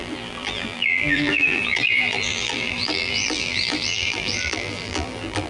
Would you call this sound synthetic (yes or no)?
yes